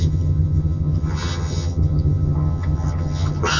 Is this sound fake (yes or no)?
yes